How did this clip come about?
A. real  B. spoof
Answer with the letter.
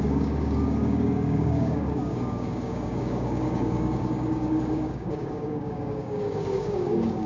B